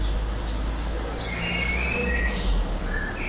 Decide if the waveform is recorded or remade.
recorded